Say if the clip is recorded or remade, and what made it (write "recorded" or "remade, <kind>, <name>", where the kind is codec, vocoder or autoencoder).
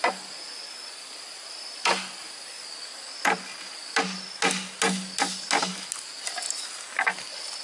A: recorded